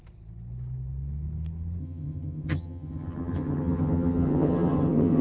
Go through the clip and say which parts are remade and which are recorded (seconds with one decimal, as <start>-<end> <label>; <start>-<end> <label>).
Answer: 0.0-1.8 recorded; 1.8-5.2 remade